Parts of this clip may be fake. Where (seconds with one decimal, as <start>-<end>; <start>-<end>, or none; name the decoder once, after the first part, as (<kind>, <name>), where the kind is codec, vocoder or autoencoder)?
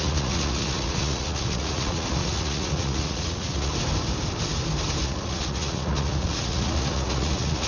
0.0-3.7 (vocoder, Vocos); 5.0-7.7